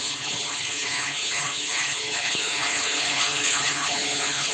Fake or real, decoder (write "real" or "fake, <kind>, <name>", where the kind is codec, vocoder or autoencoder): fake, codec, HILCodec